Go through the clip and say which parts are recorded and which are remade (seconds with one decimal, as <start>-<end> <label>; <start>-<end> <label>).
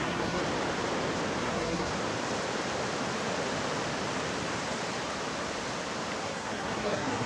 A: 0.0-0.4 remade; 0.4-1.4 recorded; 1.4-1.9 remade; 1.9-6.2 recorded; 6.2-7.3 remade